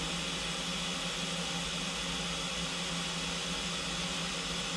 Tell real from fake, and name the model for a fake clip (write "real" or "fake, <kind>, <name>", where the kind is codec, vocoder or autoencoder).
real